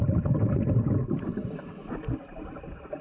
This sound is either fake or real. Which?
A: real